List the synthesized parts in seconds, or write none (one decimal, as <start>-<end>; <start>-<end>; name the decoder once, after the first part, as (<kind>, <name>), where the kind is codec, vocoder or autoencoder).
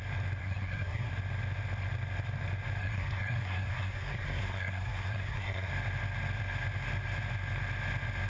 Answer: 0.4-1.1 (codec, SNAC); 2.8-5.7